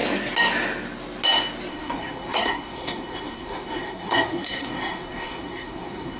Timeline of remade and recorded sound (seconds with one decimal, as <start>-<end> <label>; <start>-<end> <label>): 0.0-1.7 recorded; 1.7-6.2 remade